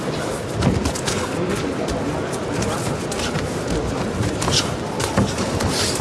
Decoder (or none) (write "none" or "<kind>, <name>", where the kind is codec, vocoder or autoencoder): none